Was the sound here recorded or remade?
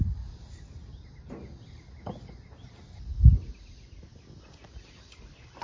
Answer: recorded